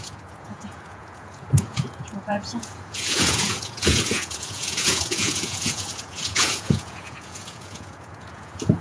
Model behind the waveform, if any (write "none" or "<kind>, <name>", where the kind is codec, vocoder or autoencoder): vocoder, Vocos